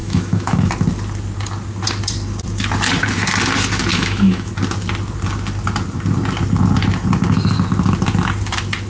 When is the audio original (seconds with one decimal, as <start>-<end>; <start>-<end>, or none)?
0.7-3.9; 4.5-8.9